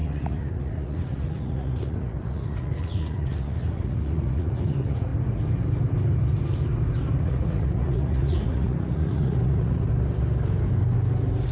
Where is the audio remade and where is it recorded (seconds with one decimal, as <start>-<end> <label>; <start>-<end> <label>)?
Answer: 0.0-5.1 remade; 5.1-7.1 recorded; 7.1-9.9 remade; 9.9-11.5 recorded